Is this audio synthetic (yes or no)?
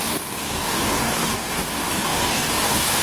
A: yes